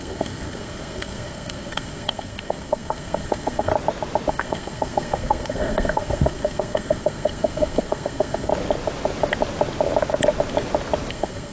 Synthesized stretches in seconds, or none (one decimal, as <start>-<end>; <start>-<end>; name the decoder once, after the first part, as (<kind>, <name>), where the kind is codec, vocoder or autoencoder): 0.0-3.7 (codec, SNAC); 4.3-8.5; 11.1-11.5